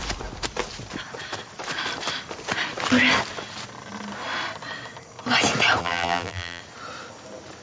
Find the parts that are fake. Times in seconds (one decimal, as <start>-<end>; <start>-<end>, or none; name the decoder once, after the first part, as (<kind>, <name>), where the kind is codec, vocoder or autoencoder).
5.8-6.6 (vocoder, BigVGAN v2)